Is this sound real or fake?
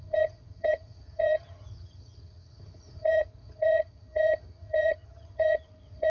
fake